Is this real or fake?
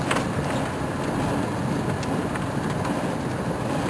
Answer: real